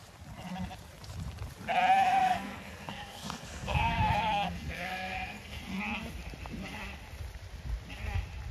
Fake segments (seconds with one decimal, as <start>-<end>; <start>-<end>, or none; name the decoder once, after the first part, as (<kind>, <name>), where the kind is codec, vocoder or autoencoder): 2.1-5.6 (codec, SNAC)